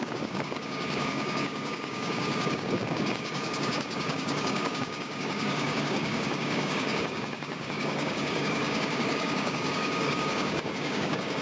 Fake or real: fake